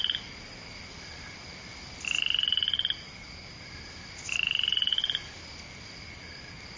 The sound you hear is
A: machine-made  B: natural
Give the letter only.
B